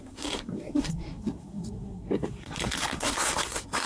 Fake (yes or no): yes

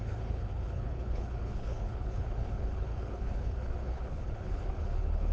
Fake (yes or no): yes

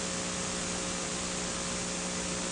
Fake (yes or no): no